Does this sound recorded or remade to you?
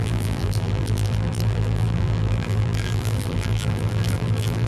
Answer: remade